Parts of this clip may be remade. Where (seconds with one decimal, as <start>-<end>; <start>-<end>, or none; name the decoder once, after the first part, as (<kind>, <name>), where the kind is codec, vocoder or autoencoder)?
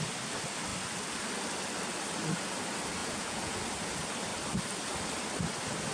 3.0-3.6 (vocoder, Vocos)